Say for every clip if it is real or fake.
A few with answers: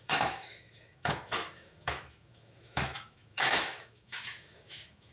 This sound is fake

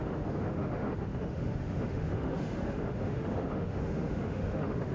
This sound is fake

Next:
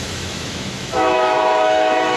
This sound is fake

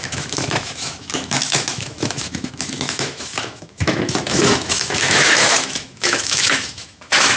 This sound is fake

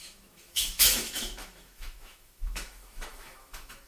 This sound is fake